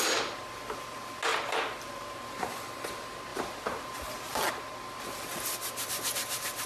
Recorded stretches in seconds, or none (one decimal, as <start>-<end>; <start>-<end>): 0.0-1.3; 2.4-3.3; 4.4-6.7

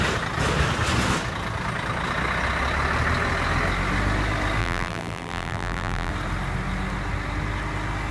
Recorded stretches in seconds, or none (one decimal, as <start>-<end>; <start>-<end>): 0.0-4.6; 6.1-8.1